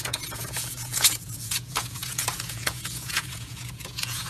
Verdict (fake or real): fake